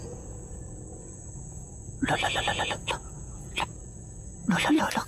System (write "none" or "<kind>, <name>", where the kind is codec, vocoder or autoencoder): vocoder, Vocos